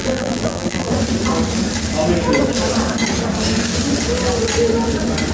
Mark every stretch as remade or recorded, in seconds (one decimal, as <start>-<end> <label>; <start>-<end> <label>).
0.0-0.9 remade; 0.9-5.3 recorded